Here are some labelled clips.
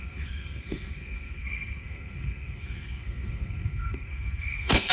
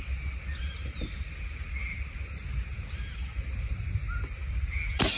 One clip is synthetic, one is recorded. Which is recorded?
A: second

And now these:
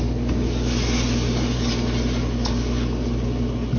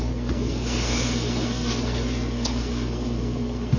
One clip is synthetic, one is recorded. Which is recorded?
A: first